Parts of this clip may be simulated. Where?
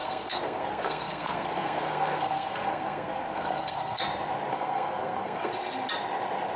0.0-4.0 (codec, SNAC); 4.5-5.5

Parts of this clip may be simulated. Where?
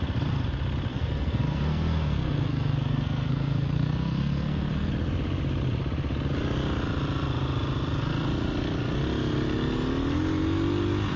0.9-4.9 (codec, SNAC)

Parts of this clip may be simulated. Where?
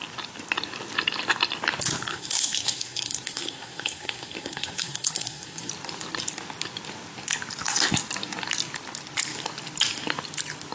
2.1-5.7 (codec, SNAC)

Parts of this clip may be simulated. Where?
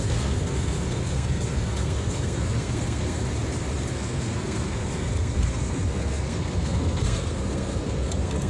0.0-3.2 (codec, SNAC); 3.9-8.5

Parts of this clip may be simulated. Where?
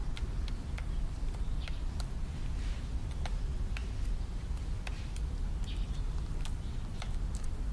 none